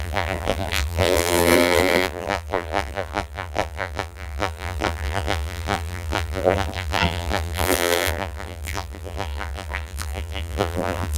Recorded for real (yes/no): no